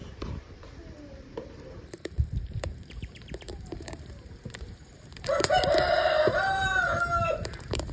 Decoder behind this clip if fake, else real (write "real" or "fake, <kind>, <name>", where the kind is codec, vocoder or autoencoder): fake, vocoder, BigVGAN v2